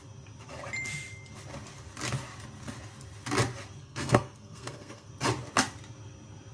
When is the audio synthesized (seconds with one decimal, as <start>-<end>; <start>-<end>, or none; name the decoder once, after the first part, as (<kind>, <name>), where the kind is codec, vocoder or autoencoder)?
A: 3.8-5.1 (codec, SNAC)